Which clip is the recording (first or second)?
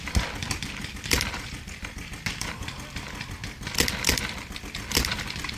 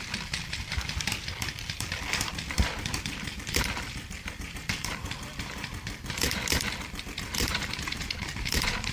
first